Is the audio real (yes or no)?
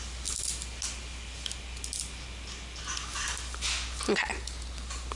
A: yes